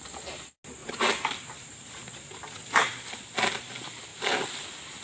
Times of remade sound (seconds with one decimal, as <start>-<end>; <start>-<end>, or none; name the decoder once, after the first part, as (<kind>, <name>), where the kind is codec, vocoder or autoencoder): 0.8-1.5 (vocoder, BigVGAN v2); 4.1-5.0